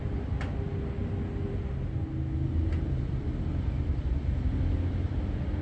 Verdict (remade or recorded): recorded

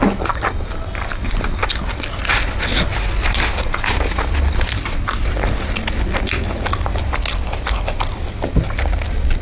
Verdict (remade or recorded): recorded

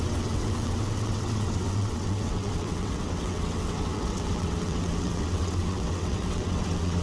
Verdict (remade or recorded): remade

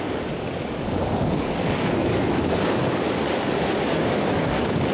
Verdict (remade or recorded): remade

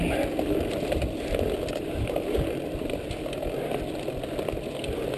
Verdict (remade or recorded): recorded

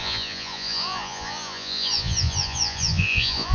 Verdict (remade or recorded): remade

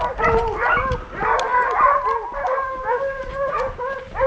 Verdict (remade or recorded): recorded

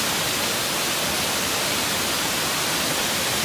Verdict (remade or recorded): recorded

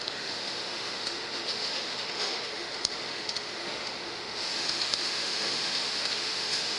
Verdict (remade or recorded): remade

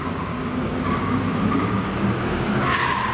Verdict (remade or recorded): remade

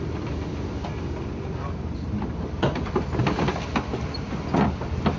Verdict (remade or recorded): remade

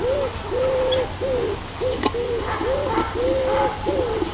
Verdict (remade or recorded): recorded